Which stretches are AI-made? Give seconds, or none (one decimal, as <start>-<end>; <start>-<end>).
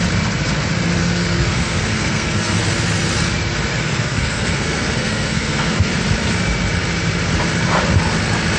1.0-2.6; 3.7-5.9